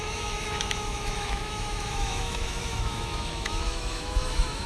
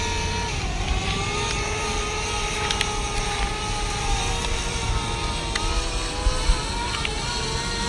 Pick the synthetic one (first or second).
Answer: first